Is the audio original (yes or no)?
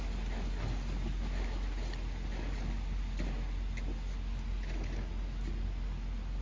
yes